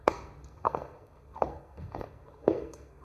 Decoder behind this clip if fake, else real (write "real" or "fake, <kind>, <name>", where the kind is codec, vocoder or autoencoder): fake, codec, SNAC